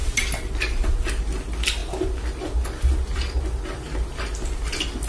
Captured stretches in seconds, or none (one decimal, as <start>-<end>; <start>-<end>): 0.0-5.1